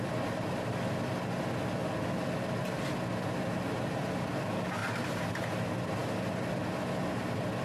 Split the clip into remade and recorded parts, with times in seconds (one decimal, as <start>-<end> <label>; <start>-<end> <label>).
0.0-4.8 recorded; 4.8-5.5 remade; 5.5-7.6 recorded